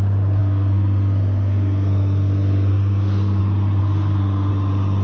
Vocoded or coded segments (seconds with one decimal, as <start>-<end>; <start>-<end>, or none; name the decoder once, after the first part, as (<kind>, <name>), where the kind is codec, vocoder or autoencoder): 0.4-3.4 (codec, SNAC); 3.8-4.5